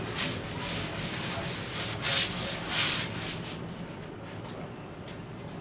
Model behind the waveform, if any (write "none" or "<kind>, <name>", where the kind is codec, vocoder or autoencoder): none